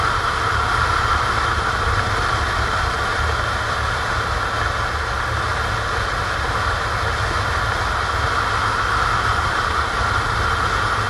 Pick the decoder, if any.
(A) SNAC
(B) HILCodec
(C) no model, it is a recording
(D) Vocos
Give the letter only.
C